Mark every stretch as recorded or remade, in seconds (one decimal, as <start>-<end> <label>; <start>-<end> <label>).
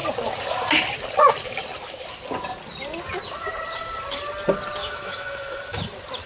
0.0-4.8 recorded; 4.8-5.8 remade; 5.8-6.3 recorded